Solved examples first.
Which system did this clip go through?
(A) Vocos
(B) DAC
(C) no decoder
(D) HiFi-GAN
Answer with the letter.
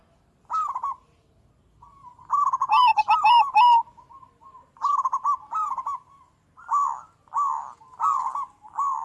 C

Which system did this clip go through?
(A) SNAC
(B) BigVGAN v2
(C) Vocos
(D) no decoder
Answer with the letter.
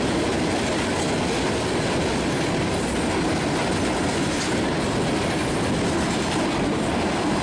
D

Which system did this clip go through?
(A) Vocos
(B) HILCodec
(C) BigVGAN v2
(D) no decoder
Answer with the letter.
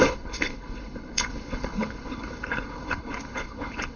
B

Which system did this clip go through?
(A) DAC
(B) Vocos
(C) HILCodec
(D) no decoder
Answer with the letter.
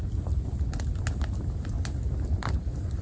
D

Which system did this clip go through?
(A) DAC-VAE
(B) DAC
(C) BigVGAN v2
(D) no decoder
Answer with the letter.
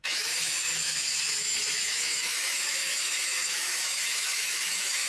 A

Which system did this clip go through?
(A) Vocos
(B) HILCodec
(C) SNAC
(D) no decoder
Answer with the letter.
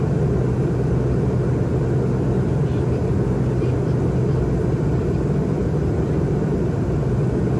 D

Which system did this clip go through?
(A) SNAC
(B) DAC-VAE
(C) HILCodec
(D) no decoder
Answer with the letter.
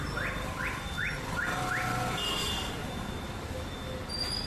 D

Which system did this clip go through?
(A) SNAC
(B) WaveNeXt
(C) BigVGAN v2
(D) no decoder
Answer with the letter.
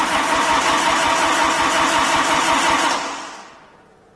D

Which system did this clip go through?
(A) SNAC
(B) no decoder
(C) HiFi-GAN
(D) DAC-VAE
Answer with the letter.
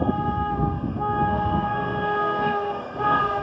A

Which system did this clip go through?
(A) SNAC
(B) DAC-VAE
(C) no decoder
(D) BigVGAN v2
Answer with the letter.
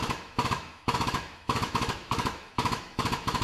B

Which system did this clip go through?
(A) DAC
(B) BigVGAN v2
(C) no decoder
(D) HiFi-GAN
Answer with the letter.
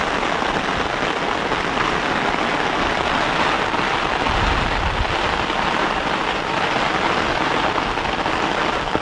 C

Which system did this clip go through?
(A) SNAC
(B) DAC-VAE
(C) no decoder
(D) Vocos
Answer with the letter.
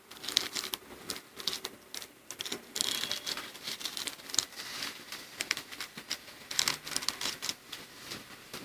C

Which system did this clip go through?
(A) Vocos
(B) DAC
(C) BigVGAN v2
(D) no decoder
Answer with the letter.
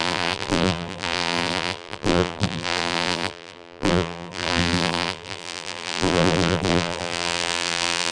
C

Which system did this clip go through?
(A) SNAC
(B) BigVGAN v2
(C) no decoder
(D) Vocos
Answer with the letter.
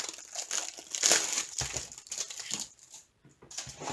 C